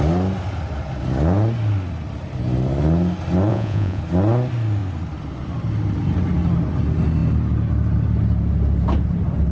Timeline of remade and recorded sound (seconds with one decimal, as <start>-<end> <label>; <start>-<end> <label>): 0.0-3.5 recorded; 3.5-4.0 remade; 4.0-9.5 recorded